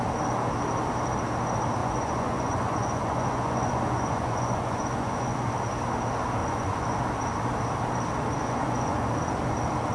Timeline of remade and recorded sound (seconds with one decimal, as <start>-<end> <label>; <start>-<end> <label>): 0.0-1.8 recorded; 1.8-5.5 remade; 5.5-6.4 recorded; 6.4-7.0 remade; 7.0-8.4 recorded; 8.4-9.1 remade; 9.1-9.9 recorded

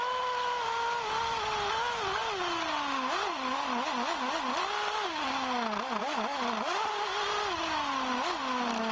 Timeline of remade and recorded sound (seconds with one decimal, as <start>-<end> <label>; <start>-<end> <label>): 0.0-8.9 recorded

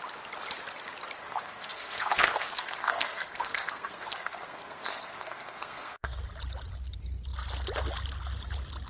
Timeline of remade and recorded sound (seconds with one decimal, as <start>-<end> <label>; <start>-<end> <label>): 0.0-1.2 recorded; 1.2-6.2 remade; 6.2-8.9 recorded

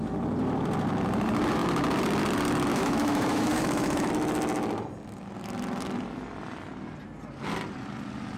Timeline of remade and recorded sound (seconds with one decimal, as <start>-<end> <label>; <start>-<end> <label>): 0.0-2.7 recorded; 2.7-4.1 remade; 4.1-8.4 recorded

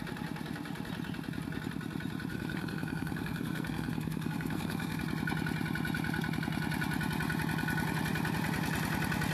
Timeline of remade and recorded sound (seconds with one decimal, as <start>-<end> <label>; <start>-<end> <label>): 0.0-2.3 recorded; 2.3-5.0 remade; 5.0-9.3 recorded